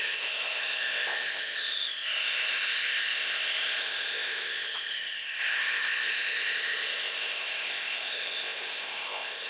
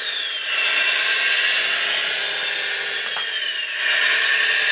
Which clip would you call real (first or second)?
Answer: second